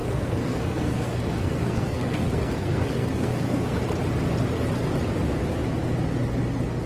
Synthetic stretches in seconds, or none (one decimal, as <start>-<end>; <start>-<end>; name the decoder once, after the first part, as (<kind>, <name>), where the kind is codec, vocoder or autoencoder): 0.0-3.8 (codec, SNAC)

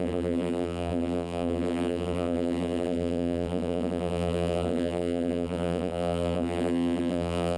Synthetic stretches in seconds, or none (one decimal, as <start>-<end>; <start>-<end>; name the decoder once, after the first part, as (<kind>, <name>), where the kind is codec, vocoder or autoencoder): 0.0-7.6 (vocoder, BigVGAN v2)

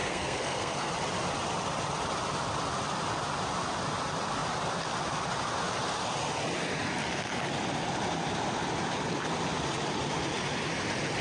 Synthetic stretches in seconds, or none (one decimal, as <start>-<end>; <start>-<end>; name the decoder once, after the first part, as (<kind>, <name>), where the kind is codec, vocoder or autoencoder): 0.0-0.9 (codec, SNAC)

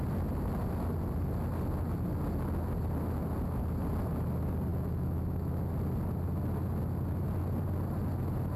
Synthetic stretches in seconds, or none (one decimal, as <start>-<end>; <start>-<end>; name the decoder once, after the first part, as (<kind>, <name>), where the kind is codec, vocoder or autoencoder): 4.7-5.7 (autoencoder, DAC-VAE)

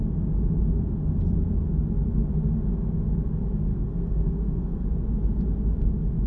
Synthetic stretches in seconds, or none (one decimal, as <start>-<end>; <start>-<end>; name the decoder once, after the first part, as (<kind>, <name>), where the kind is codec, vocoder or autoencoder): 3.7-4.9 (codec, SNAC)